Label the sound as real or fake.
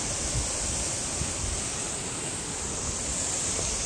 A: real